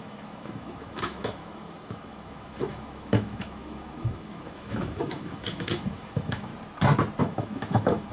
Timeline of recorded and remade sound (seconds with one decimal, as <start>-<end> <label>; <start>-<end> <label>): 0.0-6.5 remade; 6.5-7.2 recorded; 7.2-8.1 remade